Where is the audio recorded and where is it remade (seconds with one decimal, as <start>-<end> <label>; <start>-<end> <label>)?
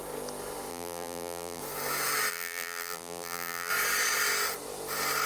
0.0-0.7 recorded; 0.7-1.6 remade; 1.6-2.3 recorded; 2.3-3.7 remade; 3.7-5.3 recorded